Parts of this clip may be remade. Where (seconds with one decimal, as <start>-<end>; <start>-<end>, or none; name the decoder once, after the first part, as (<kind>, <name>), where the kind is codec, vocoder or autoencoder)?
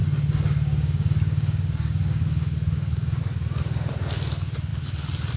0.0-3.2 (codec, DAC)